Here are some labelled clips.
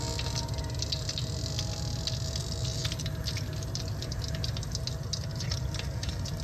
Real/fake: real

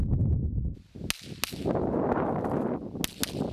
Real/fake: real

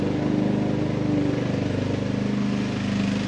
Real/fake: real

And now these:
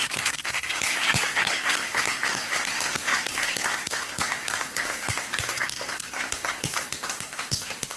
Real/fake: fake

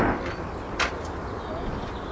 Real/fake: real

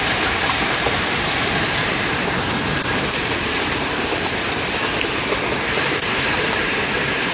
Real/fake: fake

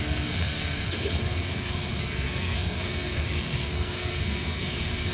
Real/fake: fake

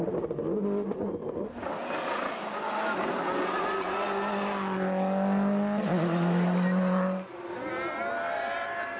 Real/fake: real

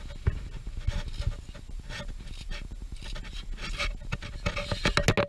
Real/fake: real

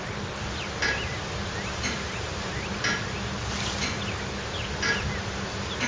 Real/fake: real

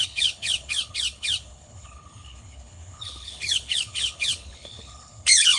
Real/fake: fake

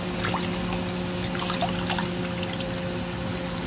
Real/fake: real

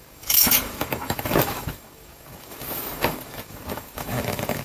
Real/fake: fake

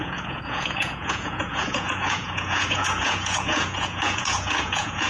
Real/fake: fake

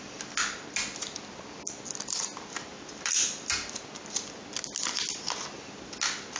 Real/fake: real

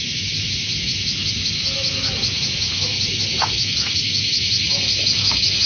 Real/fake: fake